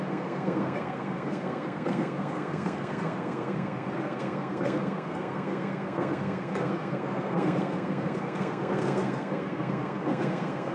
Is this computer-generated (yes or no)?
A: yes